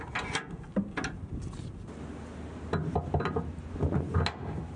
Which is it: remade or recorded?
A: recorded